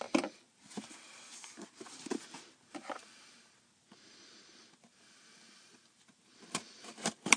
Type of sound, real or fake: fake